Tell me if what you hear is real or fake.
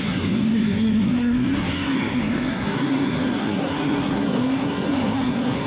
fake